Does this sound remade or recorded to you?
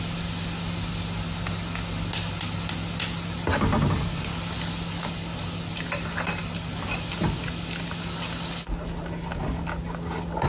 recorded